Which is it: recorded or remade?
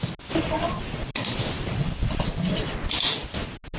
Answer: recorded